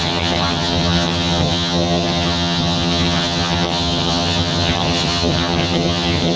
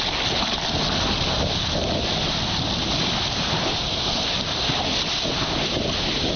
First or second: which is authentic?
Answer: second